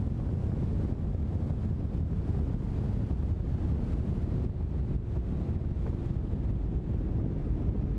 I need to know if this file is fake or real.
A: real